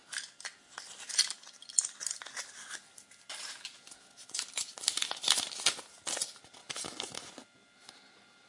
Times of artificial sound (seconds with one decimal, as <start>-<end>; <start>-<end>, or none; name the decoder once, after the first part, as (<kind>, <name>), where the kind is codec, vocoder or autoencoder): none